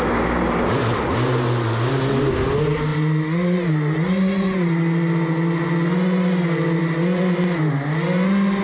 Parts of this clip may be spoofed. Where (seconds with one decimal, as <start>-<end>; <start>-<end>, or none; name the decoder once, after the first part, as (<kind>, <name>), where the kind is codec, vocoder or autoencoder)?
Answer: none